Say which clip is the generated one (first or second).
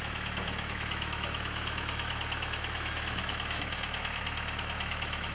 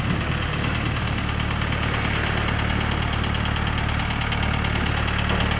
first